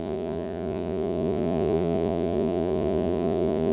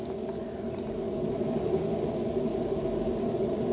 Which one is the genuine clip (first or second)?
second